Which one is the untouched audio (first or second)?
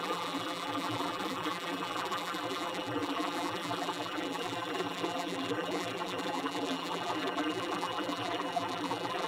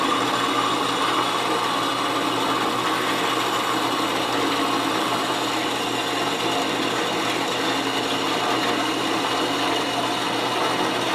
second